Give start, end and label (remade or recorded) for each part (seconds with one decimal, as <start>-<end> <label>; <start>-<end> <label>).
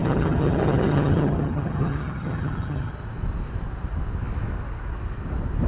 0.0-2.9 remade; 2.9-5.7 recorded